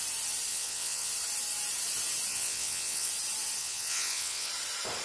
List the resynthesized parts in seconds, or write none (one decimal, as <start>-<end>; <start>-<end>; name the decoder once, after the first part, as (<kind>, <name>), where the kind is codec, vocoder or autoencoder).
0.5-1.1 (vocoder, WaveNeXt); 2.3-3.1; 3.6-4.5